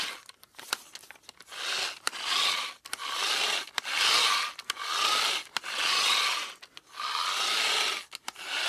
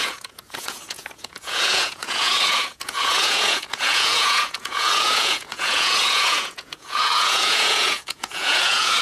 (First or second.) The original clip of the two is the first